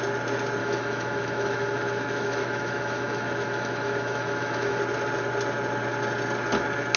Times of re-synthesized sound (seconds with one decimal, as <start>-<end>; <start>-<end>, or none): 0.6-4.8